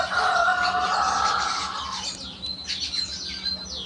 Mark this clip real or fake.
real